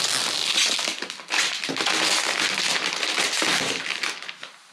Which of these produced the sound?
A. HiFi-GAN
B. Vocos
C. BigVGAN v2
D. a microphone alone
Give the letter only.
D